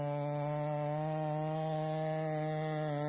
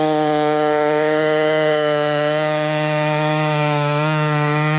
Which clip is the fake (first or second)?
second